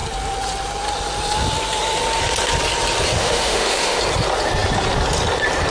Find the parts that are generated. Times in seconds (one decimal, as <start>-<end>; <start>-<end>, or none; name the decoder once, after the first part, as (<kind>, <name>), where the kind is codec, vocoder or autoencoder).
3.2-4.0 (autoencoder, DAC-VAE)